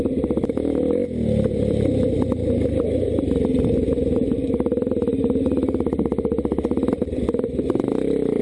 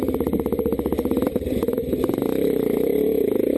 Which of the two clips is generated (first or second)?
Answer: second